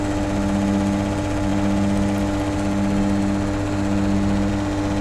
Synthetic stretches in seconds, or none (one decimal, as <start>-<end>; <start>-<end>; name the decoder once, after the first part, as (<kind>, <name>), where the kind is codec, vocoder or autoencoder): none